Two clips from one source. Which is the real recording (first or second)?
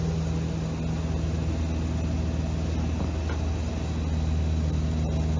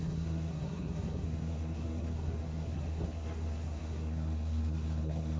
first